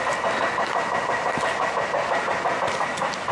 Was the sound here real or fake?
real